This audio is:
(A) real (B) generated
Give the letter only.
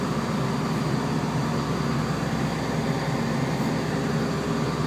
A